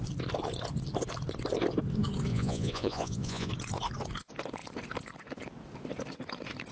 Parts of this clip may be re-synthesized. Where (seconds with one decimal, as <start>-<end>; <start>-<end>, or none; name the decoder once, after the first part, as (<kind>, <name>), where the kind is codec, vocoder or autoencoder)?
2.3-3.5 (vocoder, Vocos)